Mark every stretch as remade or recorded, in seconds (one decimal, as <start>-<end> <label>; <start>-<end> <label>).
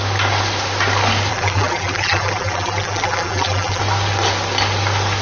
0.0-1.3 recorded; 1.3-3.8 remade; 3.8-5.2 recorded